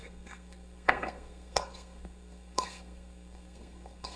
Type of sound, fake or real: fake